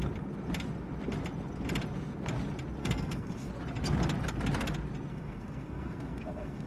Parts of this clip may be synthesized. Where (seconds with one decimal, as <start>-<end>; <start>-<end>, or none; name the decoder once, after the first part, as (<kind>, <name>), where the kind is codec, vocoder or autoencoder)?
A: 2.8-3.5 (codec, SNAC); 5.1-6.7